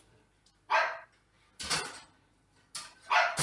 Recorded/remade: recorded